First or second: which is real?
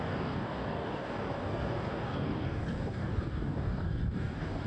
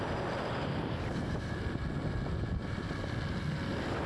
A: second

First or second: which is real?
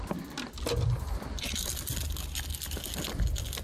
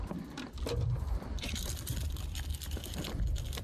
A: first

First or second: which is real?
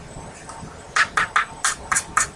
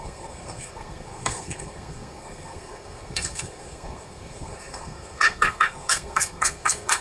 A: first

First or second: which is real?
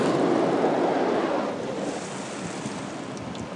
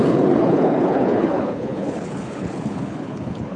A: first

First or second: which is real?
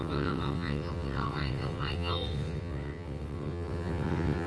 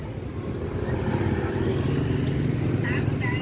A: second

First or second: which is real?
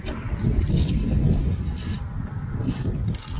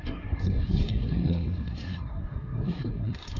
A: first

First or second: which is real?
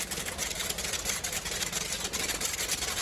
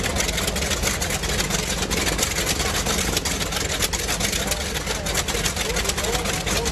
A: second